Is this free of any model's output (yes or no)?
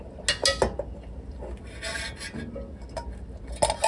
yes